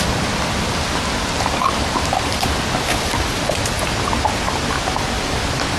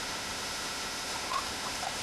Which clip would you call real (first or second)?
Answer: first